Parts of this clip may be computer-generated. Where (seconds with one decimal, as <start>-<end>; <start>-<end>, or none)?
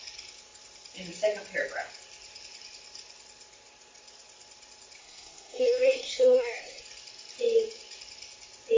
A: 5.0-6.8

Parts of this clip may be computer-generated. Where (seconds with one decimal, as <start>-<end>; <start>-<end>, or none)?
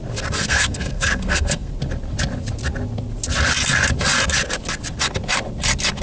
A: 0.4-1.7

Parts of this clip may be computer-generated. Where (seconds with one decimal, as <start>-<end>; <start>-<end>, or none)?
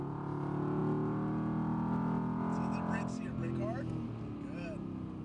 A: none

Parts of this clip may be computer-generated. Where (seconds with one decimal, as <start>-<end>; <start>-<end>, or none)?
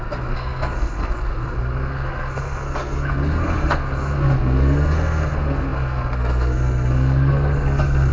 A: 0.0-8.1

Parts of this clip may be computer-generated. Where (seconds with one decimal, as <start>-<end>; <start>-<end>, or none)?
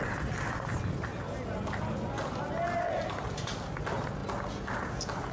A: none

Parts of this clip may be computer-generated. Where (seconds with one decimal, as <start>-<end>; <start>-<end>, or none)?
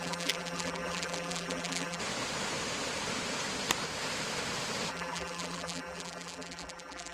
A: 0.0-2.0; 4.9-7.1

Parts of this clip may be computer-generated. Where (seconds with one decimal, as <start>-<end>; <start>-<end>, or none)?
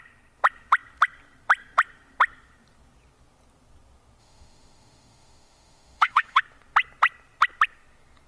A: 4.2-6.4